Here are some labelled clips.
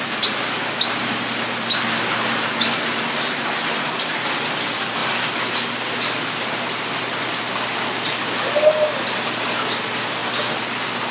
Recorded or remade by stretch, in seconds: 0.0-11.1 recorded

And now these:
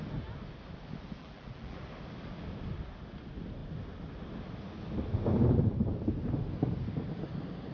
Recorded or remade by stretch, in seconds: 0.0-1.2 recorded; 1.2-1.8 remade; 1.8-7.7 recorded

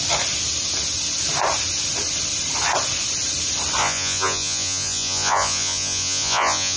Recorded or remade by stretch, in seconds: 0.0-3.8 recorded; 3.8-6.8 remade

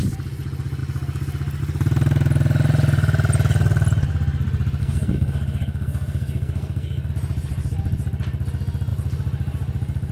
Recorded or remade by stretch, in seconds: 0.0-4.8 recorded; 4.8-7.1 remade; 7.1-10.1 recorded

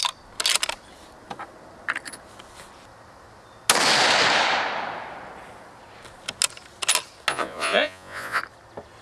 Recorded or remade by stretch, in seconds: 0.0-7.3 recorded; 7.3-8.4 remade; 8.4-9.0 recorded

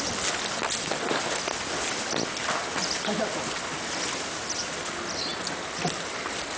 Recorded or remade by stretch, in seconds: 0.0-6.6 recorded